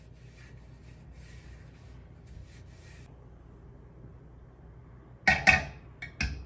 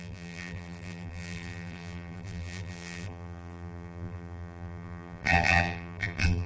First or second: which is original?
first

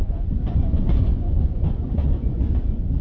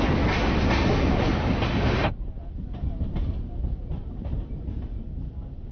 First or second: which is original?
second